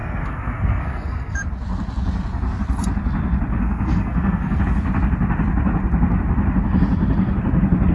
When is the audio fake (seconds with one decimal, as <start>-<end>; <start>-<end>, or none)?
0.0-1.4; 3.5-4.6